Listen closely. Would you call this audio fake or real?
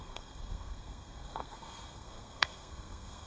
fake